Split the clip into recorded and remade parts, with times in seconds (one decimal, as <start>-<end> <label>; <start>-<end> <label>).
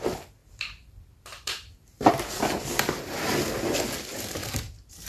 0.0-0.4 recorded; 0.4-2.1 remade; 2.1-4.4 recorded; 4.4-5.1 remade